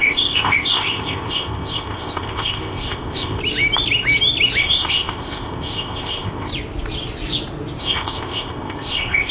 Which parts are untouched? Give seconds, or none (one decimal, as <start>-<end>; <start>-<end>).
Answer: 3.4-4.6; 6.5-7.8